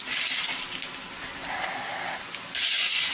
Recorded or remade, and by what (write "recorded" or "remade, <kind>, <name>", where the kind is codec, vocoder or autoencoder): recorded